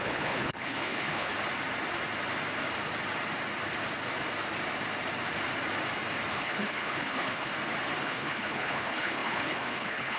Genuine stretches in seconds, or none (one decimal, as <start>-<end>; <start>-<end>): 1.3-6.3; 7.5-8.0